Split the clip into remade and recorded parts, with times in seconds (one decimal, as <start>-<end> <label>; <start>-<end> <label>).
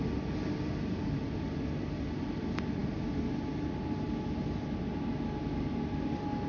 0.0-6.5 recorded